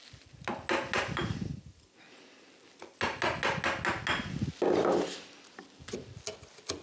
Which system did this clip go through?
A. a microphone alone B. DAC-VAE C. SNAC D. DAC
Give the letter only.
A